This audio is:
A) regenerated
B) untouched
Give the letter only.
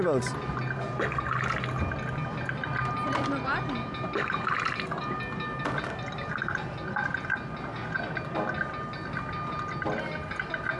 B